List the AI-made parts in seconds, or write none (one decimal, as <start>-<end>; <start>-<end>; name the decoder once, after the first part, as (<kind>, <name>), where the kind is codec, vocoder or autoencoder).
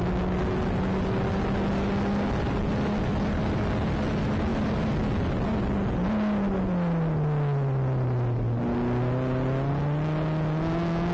none